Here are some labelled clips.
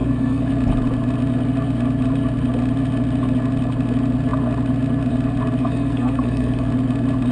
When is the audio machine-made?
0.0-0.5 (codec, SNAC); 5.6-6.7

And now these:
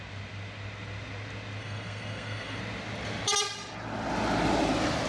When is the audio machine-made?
1.6-2.6 (codec, SNAC)